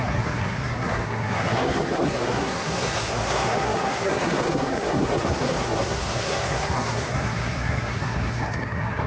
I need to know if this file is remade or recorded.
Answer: remade